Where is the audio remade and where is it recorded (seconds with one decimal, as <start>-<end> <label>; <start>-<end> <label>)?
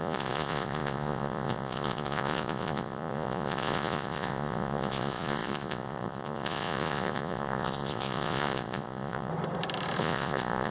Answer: 0.0-9.3 remade; 9.3-10.0 recorded; 10.0-10.7 remade